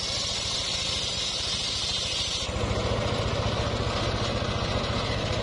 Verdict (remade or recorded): recorded